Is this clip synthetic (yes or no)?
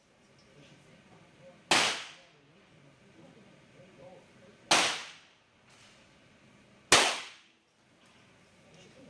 no